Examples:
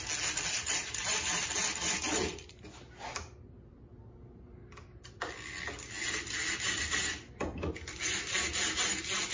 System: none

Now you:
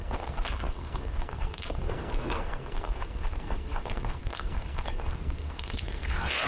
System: codec, SNAC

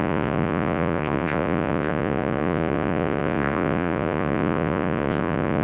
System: vocoder, Vocos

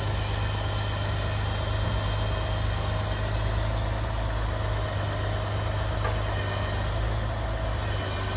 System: none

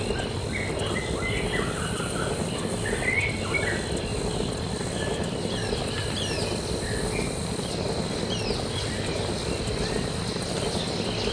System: none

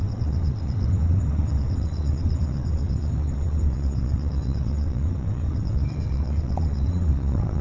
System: vocoder, WaveNeXt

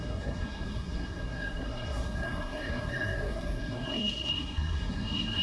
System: codec, SNAC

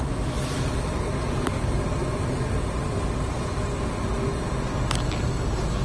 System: none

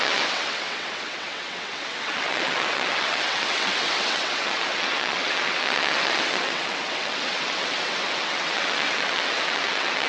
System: vocoder, WaveNeXt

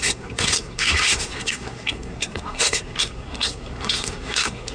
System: codec, SNAC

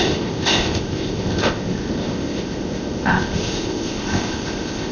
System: codec, ZipCodec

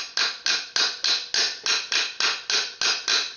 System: none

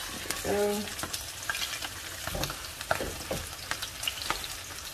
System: none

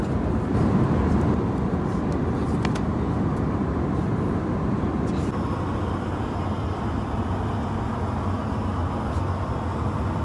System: none